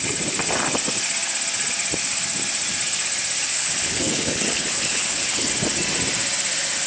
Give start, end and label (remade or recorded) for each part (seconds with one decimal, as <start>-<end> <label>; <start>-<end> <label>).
0.0-3.5 recorded; 3.5-5.5 remade; 5.5-6.9 recorded